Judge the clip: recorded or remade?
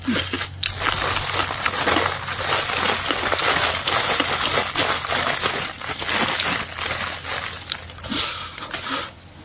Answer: recorded